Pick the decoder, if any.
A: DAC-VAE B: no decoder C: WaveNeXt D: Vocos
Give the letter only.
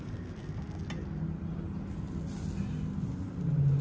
B